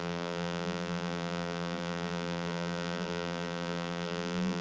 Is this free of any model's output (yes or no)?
no